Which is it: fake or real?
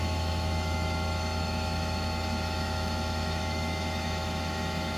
fake